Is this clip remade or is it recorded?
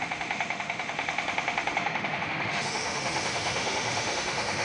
remade